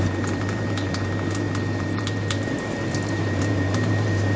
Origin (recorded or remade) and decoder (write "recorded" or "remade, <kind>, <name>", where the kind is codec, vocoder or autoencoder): remade, vocoder, BigVGAN v2